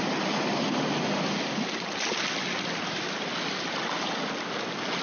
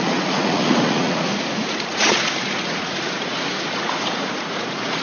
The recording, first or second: first